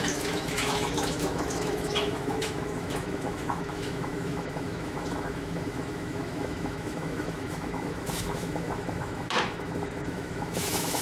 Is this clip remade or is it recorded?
remade